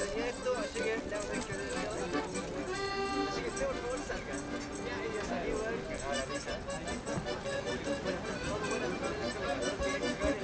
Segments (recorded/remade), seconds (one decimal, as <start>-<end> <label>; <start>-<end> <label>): 0.0-10.4 recorded